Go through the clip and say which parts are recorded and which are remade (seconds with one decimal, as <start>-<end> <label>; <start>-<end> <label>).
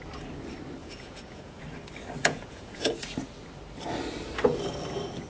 0.0-0.8 recorded; 0.8-1.6 remade; 1.6-2.2 recorded; 2.2-2.9 remade; 2.9-5.3 recorded